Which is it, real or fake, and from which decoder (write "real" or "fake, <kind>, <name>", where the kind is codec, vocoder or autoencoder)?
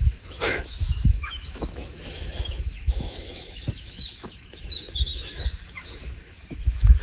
fake, autoencoder, DAC-VAE